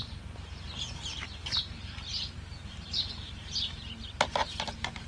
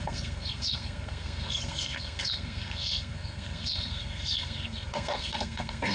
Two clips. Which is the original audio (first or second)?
first